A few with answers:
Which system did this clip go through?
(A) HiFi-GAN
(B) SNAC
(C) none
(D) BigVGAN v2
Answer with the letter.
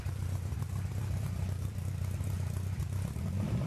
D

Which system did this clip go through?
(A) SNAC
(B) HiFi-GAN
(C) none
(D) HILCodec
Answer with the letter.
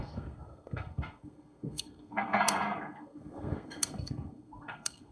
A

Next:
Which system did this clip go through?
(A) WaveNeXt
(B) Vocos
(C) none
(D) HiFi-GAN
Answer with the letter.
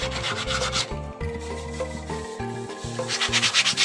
C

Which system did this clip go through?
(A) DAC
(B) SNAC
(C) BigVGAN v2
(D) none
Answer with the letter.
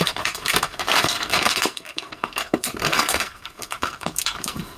B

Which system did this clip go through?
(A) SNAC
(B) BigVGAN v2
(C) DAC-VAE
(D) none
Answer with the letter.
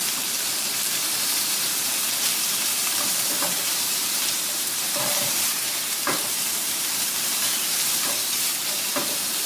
B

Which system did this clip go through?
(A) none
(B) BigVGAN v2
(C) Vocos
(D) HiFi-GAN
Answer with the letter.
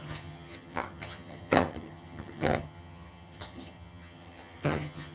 D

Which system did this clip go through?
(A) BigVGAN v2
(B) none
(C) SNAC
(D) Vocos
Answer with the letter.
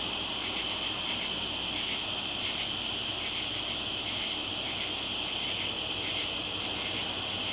B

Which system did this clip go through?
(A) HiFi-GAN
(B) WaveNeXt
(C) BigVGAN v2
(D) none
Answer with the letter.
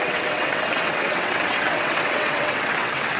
B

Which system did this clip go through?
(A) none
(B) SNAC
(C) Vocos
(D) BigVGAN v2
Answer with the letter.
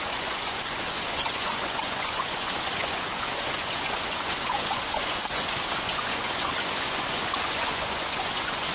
C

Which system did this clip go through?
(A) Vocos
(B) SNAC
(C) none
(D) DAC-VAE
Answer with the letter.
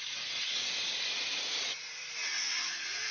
A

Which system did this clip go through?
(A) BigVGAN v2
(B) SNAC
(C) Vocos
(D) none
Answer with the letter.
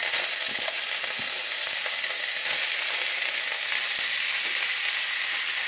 D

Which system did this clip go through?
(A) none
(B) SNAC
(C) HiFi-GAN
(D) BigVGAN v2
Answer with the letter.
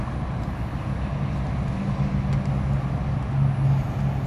A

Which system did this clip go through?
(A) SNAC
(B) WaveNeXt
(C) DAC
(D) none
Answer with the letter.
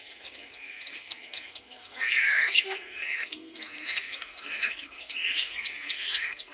A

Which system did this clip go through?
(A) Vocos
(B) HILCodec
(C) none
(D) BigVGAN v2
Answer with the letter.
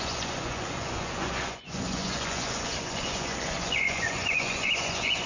A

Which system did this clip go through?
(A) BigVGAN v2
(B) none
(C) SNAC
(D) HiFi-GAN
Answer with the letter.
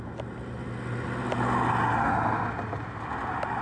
B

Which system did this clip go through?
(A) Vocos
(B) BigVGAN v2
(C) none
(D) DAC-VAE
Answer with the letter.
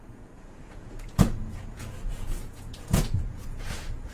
A